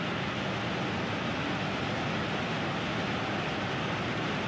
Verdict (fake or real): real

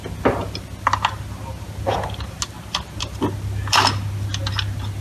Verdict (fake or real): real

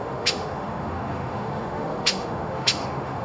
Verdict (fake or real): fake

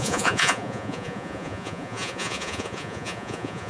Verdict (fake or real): fake